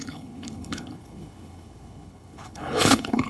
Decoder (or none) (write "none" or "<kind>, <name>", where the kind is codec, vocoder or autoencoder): codec, HILCodec